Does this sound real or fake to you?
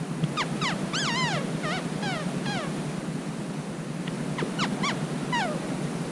real